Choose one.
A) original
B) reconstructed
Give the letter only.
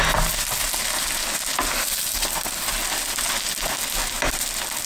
A